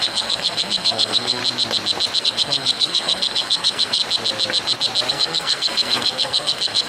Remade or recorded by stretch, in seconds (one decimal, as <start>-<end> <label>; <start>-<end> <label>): 0.0-1.4 remade; 1.4-2.2 recorded; 2.2-4.0 remade; 4.0-5.1 recorded; 5.1-6.9 remade